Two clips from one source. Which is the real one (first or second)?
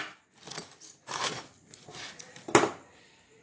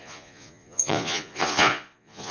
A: first